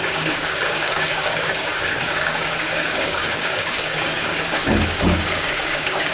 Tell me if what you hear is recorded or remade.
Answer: remade